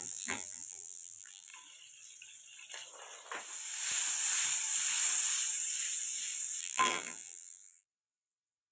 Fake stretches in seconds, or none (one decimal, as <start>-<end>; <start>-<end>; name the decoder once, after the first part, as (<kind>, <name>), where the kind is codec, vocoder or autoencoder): 0.0-1.5 (vocoder, BigVGAN v2); 6.6-8.7